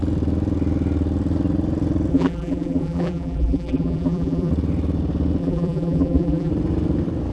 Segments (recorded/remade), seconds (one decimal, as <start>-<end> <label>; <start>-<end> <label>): 0.0-2.1 recorded; 2.1-4.5 remade; 4.5-5.4 recorded; 5.4-6.5 remade; 6.5-7.3 recorded

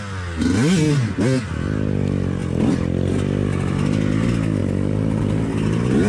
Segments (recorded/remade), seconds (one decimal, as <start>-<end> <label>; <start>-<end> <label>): 0.0-4.6 recorded; 4.6-5.2 remade; 5.2-6.1 recorded